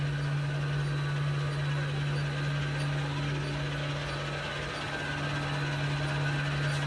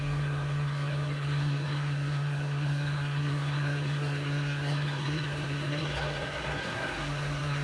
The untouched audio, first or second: first